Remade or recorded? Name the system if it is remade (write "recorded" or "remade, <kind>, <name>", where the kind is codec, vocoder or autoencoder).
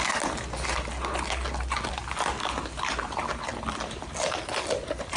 recorded